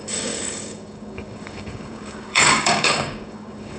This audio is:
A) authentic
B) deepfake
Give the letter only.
B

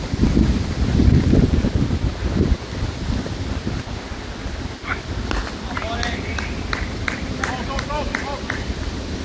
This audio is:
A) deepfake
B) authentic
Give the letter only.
B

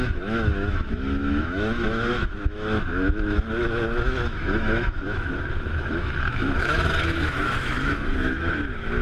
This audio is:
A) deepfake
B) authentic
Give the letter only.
A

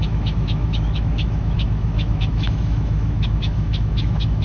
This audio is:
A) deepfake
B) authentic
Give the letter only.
A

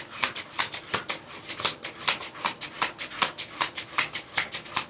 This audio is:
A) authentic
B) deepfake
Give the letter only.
A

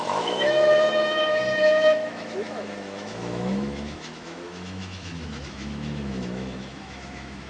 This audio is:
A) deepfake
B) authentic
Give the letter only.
A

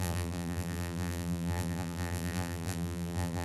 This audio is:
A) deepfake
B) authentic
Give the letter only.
A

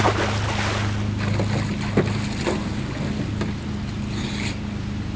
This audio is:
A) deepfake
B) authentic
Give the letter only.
B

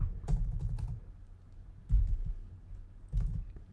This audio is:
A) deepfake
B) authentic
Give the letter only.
B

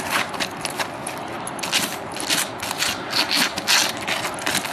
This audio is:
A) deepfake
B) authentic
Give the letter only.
B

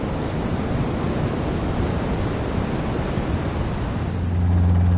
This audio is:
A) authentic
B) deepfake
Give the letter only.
A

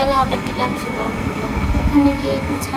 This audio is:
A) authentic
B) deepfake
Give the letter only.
B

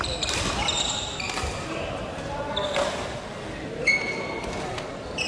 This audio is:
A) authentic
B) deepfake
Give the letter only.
A